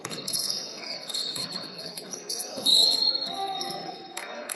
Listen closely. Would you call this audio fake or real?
fake